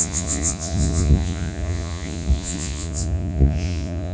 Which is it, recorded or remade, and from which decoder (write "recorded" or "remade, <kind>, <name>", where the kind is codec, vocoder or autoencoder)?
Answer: remade, vocoder, Vocos